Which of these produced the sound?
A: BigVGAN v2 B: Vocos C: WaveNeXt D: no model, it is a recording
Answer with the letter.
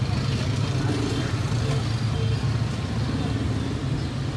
D